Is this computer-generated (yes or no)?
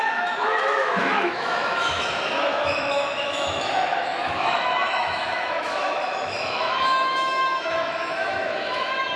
yes